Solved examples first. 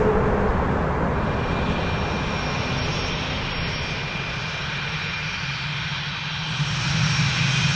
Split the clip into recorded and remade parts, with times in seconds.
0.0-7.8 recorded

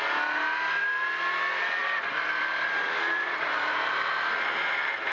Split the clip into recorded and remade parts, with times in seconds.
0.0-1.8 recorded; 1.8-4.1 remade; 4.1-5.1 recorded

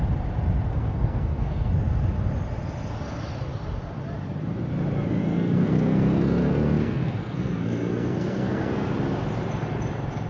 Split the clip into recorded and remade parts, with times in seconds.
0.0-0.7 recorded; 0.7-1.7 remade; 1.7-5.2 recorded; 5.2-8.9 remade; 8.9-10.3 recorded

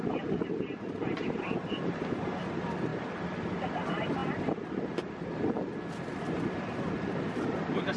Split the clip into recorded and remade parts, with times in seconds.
0.0-8.0 recorded